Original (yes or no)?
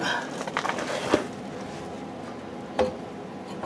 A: yes